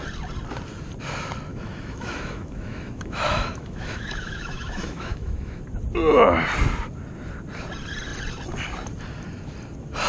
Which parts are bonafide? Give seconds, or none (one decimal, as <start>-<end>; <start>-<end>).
0.0-1.5; 5.6-10.1